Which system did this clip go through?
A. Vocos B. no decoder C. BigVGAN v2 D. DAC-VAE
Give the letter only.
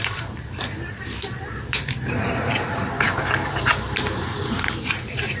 C